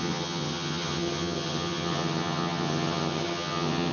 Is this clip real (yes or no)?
no